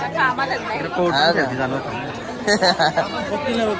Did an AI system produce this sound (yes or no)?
no